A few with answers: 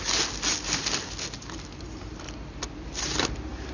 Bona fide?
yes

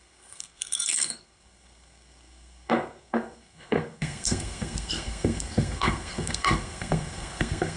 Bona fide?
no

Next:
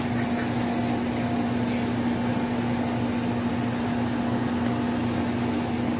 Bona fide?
yes